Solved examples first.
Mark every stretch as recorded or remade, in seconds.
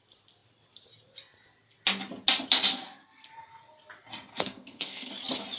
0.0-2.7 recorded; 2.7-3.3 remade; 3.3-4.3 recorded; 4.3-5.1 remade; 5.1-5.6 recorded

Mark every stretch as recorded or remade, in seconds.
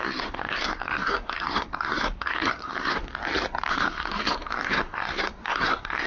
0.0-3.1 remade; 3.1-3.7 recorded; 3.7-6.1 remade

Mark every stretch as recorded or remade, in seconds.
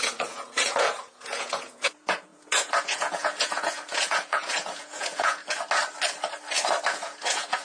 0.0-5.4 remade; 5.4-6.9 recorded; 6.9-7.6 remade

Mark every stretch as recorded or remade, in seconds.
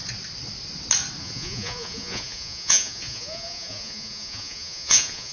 0.0-1.2 recorded; 1.2-5.3 remade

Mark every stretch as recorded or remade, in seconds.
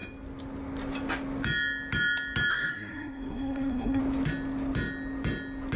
0.0-2.5 recorded; 2.5-4.0 remade; 4.0-5.8 recorded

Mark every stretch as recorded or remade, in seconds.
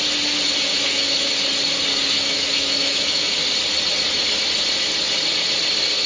0.0-0.7 recorded; 0.7-1.3 remade; 1.3-1.9 recorded; 1.9-3.3 remade; 3.3-6.1 recorded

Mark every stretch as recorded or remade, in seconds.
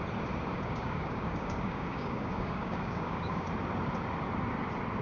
0.0-0.5 recorded; 0.5-3.5 remade; 3.5-5.0 recorded